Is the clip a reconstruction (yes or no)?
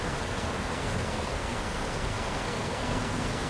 yes